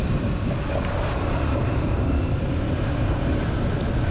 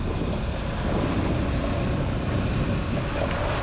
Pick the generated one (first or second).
first